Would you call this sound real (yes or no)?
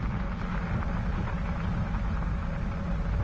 yes